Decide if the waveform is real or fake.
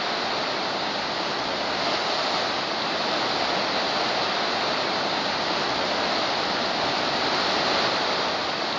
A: real